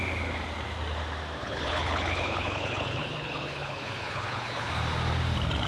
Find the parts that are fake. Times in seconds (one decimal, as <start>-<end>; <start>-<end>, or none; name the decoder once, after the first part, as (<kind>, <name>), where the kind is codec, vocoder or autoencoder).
1.4-4.7 (codec, HILCodec)